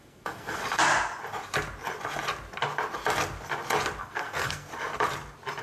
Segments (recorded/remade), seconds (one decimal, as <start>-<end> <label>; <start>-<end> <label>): 0.0-0.6 remade; 0.6-4.0 recorded; 4.0-4.7 remade; 4.7-5.6 recorded